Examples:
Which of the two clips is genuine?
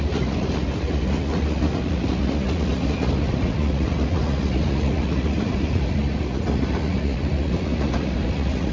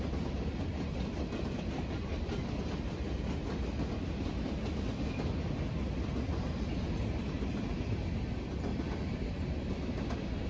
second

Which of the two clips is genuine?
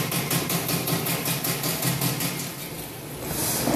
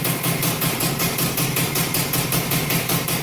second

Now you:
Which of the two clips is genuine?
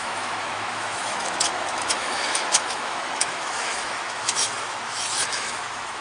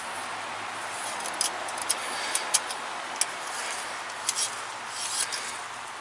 second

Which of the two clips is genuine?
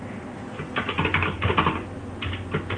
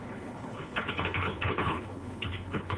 first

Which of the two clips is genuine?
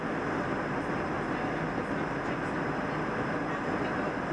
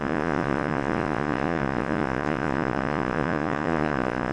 first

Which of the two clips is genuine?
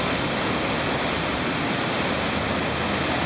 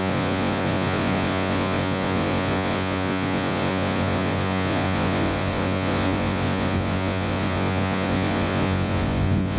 first